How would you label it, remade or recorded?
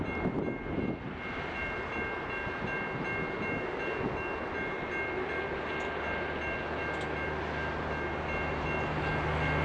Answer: recorded